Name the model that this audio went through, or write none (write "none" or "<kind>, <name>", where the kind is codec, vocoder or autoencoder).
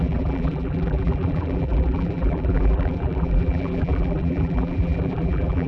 vocoder, BigVGAN v2